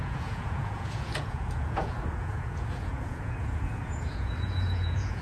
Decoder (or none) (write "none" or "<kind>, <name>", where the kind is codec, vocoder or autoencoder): vocoder, Vocos